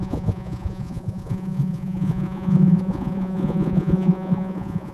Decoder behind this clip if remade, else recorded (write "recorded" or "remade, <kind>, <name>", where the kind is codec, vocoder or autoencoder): remade, vocoder, Vocos